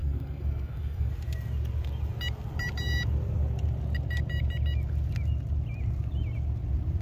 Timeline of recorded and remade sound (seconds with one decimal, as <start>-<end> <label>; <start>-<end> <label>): 0.0-1.1 remade; 1.1-7.0 recorded